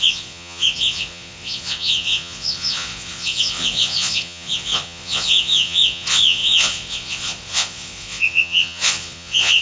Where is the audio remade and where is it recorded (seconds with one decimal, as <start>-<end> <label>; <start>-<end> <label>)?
0.0-9.6 remade